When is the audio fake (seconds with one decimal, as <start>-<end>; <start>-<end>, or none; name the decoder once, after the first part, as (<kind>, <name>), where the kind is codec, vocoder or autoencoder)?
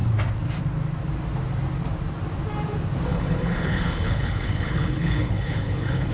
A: 3.1-6.1 (codec, HILCodec)